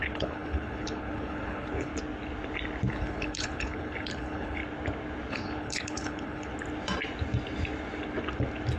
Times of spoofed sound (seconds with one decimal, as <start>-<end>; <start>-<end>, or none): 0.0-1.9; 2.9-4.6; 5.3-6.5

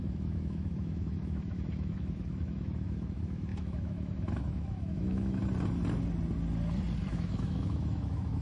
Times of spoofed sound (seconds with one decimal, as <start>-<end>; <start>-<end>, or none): 0.0-5.4; 7.1-8.4

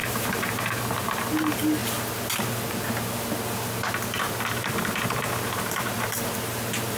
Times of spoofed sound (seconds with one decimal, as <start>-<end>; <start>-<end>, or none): 0.0-1.8; 4.5-7.0

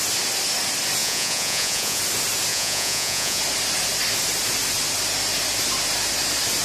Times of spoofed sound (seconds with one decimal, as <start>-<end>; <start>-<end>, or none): 1.0-2.0; 2.5-3.4

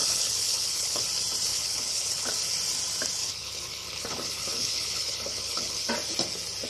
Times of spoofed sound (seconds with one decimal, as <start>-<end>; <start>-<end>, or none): 0.0-1.0; 1.5-2.3; 3.2-5.9

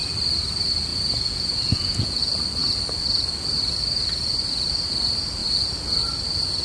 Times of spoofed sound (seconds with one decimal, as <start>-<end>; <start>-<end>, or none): 0.9-2.2

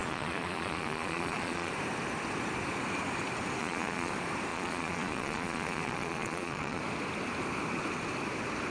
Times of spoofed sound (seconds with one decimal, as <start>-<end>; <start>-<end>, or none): 0.0-1.7; 3.6-4.1; 4.5-6.8